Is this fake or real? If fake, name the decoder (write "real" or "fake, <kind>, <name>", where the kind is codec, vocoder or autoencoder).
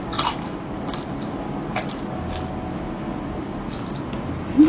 real